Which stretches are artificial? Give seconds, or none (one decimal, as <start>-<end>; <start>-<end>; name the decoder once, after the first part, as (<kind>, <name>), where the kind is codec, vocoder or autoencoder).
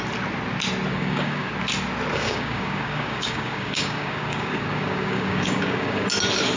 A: 0.9-1.5 (codec, DAC); 2.1-6.1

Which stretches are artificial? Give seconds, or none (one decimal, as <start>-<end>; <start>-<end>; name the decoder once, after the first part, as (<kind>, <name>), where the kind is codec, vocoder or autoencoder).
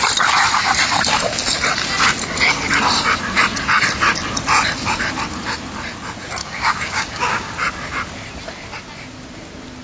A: 6.4-7.5 (codec, DAC)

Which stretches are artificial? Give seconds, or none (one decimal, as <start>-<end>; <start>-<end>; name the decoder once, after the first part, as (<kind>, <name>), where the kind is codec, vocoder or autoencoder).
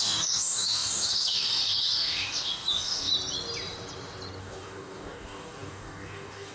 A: 0.0-3.1 (codec, DAC); 4.4-6.5